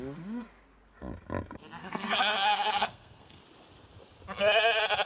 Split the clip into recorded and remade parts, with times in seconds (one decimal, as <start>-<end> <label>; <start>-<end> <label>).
0.0-1.8 recorded; 1.8-3.4 remade; 3.4-5.1 recorded